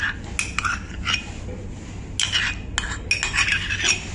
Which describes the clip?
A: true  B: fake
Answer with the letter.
A